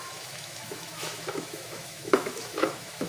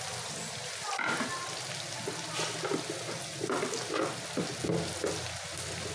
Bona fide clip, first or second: second